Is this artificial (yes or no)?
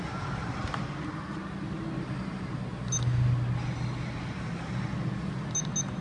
no